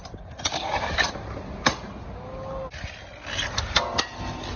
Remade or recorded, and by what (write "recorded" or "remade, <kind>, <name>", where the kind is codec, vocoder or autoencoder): recorded